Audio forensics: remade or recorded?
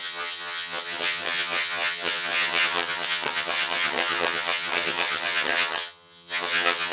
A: remade